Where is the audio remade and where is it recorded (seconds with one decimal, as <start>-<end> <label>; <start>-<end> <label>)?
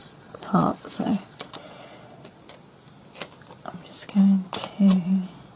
0.0-2.4 remade; 2.4-4.5 recorded; 4.5-5.6 remade